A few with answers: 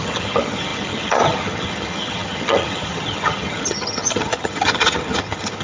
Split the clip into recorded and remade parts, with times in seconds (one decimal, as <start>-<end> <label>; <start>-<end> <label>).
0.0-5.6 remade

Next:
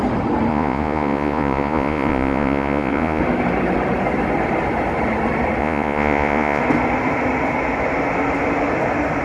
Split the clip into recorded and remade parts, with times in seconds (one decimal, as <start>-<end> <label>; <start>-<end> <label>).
0.0-0.5 recorded; 0.5-3.2 remade; 3.2-5.6 recorded; 5.6-6.6 remade; 6.6-9.2 recorded

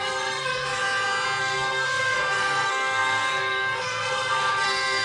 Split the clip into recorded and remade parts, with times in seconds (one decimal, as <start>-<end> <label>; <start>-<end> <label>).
0.0-0.8 remade; 0.8-1.4 recorded; 1.4-5.0 remade

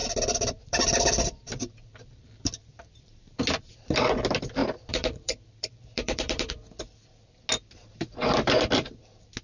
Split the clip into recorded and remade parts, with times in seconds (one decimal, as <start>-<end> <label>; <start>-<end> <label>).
0.0-3.8 remade; 3.8-4.6 recorded; 4.6-6.5 remade; 6.5-9.4 recorded